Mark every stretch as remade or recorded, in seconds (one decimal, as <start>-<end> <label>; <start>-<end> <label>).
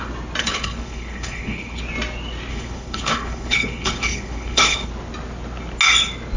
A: 0.0-0.4 recorded; 0.4-1.8 remade; 1.8-2.5 recorded; 2.5-4.9 remade; 4.9-6.4 recorded